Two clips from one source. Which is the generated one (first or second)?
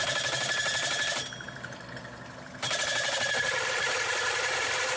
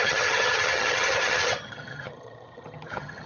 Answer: second